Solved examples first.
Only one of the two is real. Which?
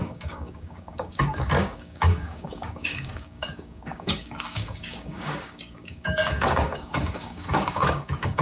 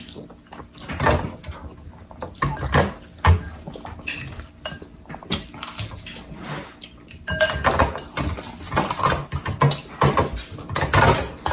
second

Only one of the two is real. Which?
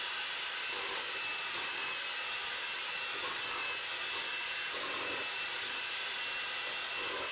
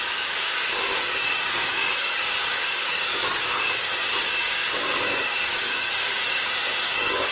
first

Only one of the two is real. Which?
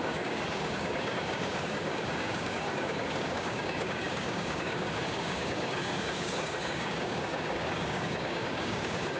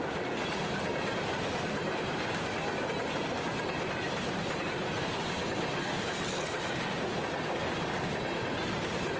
second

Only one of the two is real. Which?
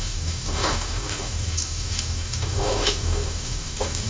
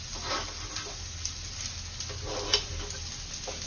second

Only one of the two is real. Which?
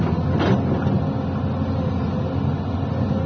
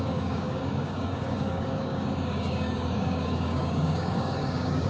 first